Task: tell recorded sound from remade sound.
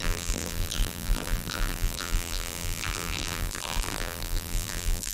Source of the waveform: remade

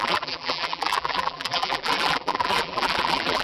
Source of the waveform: remade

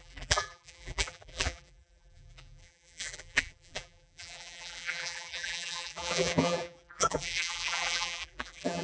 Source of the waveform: remade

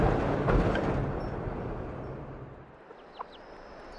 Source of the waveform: recorded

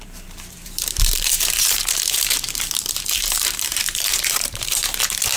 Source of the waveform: remade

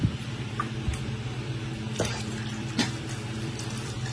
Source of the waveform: remade